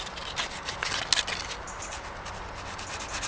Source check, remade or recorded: recorded